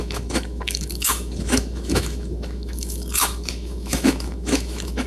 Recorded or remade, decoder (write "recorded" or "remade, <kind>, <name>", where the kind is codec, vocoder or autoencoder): remade, autoencoder, DAC-VAE